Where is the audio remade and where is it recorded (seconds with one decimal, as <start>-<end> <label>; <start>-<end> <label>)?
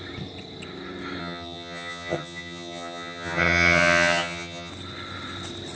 0.0-1.2 recorded; 1.2-4.7 remade; 4.7-5.8 recorded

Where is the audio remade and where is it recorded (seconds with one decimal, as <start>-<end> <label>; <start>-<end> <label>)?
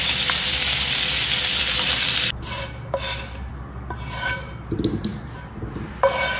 0.0-6.4 recorded